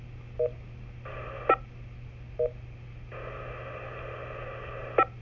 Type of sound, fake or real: real